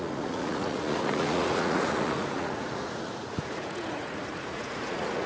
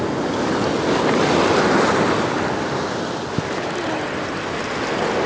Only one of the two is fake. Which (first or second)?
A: first